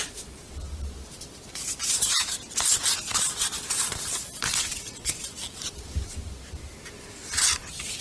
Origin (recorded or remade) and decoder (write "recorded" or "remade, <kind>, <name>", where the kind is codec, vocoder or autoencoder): recorded